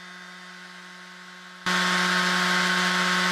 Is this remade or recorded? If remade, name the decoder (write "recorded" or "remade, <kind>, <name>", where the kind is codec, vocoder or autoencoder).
recorded